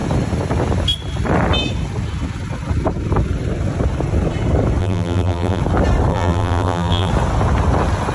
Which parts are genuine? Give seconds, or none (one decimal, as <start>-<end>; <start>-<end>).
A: 0.0-4.8; 5.6-6.1; 7.1-8.1